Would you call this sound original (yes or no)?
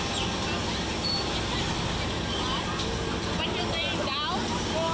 yes